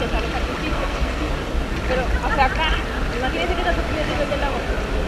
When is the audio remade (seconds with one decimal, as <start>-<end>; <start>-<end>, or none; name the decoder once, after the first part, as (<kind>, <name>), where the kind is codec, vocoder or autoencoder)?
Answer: 0.7-1.3 (codec, SNAC)